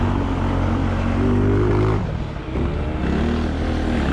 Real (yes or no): yes